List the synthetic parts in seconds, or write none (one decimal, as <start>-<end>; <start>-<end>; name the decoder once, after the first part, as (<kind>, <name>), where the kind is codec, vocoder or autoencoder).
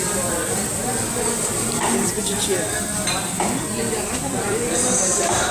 0.0-0.8 (vocoder, BigVGAN v2); 4.1-5.5